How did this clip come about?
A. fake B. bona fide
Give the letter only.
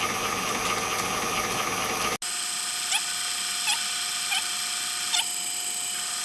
B